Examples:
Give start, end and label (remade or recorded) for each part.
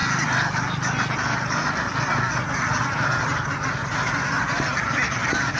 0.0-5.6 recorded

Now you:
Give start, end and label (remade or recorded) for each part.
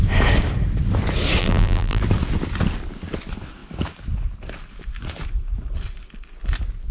0.0-1.4 recorded; 1.4-2.0 remade; 2.0-6.9 recorded